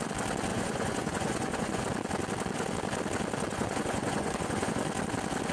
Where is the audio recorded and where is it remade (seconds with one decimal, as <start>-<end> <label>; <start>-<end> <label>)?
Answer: 0.0-0.5 recorded; 0.5-1.8 remade; 1.8-3.5 recorded; 3.5-4.8 remade; 4.8-5.5 recorded